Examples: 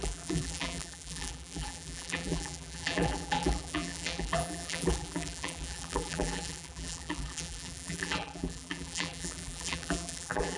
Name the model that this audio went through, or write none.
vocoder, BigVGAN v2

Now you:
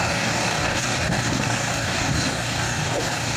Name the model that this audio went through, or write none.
codec, DAC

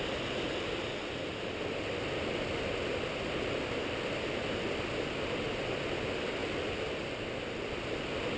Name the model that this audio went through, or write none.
none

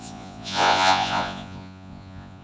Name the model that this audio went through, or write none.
vocoder, Vocos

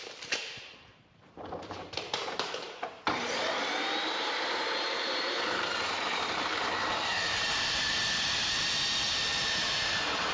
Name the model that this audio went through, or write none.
vocoder, BigVGAN v2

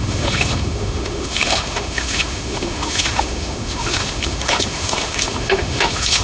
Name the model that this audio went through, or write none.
autoencoder, DAC-VAE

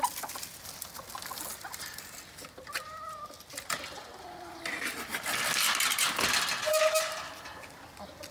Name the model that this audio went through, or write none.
none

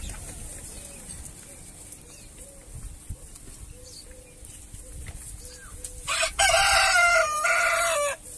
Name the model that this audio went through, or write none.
none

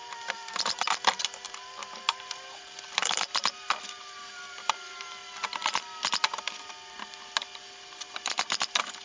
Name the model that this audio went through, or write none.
none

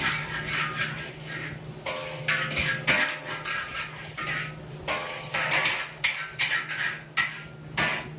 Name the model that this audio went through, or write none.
none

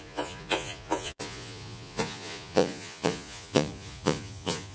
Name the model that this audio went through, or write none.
vocoder, Vocos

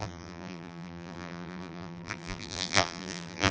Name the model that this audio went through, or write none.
vocoder, BigVGAN v2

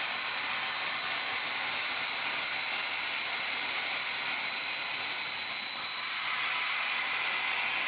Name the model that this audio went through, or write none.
none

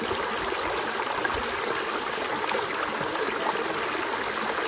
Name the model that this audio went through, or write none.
none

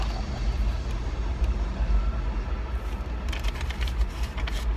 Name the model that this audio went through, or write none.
vocoder, BigVGAN v2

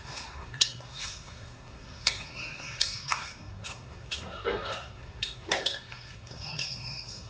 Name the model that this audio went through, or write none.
codec, SNAC